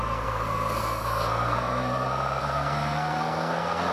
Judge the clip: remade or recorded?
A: remade